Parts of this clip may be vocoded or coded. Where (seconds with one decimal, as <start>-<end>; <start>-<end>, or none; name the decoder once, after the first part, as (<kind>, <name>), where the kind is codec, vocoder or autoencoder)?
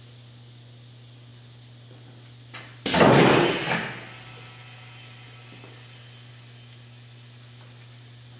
none